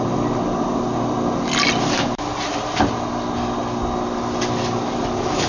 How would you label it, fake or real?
real